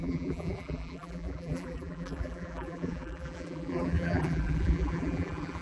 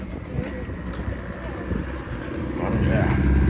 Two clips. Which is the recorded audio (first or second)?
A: second